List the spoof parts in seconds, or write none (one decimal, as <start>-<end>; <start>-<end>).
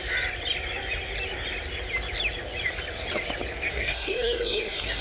3.7-5.0